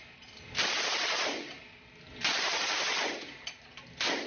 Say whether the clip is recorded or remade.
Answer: recorded